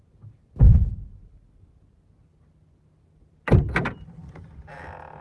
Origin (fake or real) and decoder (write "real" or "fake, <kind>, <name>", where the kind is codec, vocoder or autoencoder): real